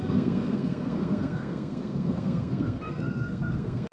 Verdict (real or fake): fake